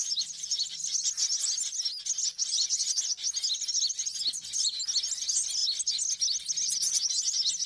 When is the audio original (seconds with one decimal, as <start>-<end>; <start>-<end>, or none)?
0.0-7.7